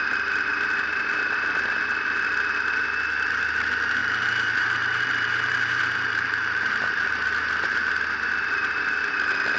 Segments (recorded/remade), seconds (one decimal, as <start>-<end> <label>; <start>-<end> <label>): 0.0-4.0 recorded; 4.0-7.9 remade; 7.9-9.6 recorded